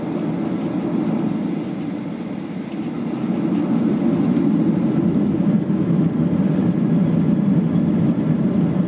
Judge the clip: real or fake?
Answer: real